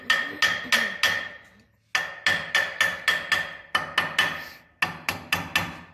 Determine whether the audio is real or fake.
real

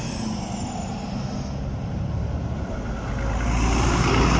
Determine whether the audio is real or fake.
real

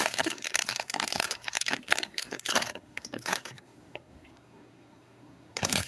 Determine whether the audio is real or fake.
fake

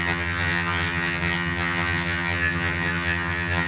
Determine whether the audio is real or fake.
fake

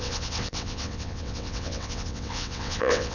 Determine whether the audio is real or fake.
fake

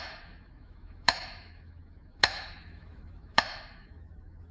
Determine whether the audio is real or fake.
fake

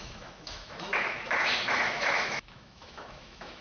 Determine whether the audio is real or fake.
fake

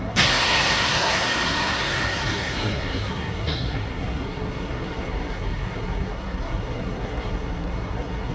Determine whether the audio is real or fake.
fake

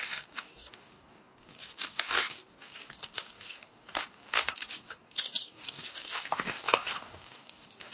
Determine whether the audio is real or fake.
fake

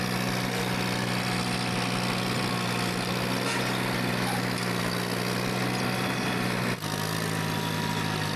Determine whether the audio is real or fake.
real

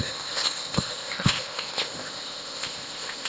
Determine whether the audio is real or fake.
fake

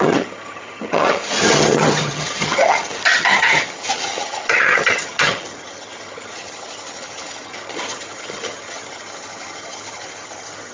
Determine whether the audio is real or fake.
fake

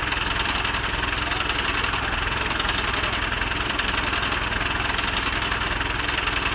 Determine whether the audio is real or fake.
real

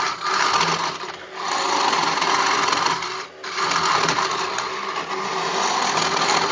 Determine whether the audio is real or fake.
real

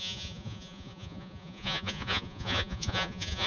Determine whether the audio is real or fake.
fake